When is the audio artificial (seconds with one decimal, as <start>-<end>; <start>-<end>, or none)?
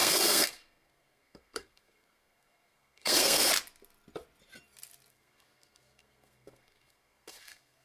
0.0-3.5; 5.1-7.8